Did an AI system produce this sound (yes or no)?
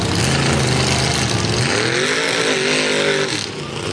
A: no